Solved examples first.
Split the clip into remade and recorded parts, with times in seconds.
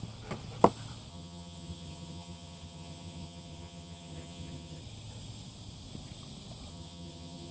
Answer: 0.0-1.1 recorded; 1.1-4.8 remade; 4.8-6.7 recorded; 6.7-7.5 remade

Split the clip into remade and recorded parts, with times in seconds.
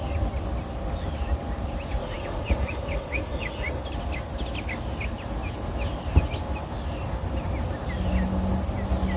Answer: 0.0-2.0 recorded; 2.0-3.8 remade; 3.8-9.2 recorded